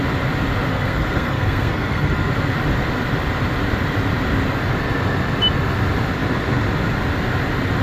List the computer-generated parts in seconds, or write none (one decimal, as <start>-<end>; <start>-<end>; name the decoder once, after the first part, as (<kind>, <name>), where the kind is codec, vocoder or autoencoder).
0.7-2.3 (codec, SNAC)